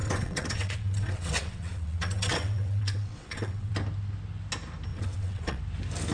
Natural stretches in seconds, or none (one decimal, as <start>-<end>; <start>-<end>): 3.7-4.9; 5.6-6.1